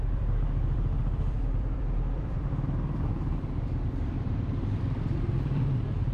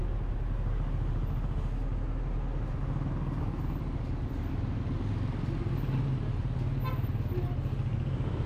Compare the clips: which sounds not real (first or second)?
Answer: first